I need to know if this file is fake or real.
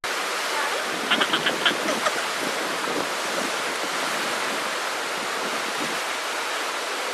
real